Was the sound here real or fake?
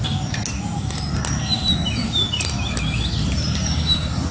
real